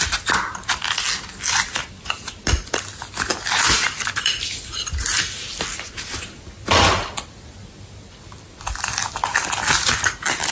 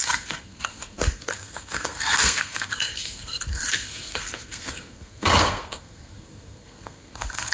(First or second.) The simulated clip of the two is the second